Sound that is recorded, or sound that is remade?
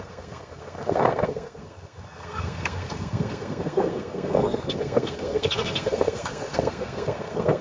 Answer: remade